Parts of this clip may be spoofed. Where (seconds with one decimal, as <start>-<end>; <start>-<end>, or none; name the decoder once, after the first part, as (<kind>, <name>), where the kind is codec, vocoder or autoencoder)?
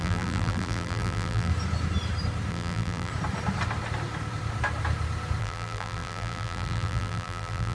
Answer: 0.0-1.5 (vocoder, BigVGAN v2); 2.5-3.1; 5.4-7.7